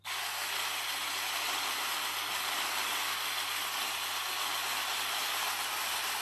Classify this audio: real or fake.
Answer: real